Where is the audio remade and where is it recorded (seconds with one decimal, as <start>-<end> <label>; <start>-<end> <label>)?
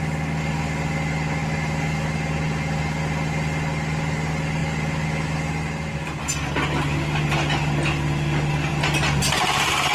0.0-9.9 recorded